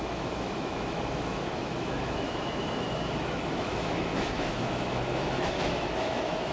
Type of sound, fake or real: fake